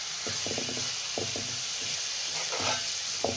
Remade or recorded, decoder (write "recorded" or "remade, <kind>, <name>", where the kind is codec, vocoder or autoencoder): recorded